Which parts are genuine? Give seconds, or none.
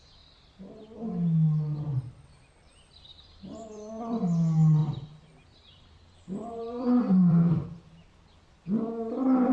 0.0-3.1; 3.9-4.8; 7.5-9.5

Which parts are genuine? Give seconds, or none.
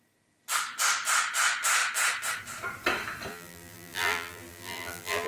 0.0-3.3